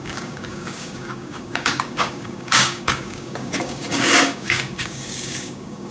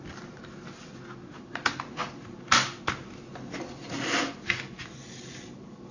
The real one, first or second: second